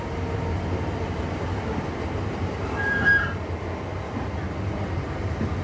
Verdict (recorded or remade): recorded